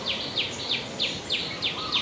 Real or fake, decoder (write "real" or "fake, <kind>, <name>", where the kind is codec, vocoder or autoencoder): real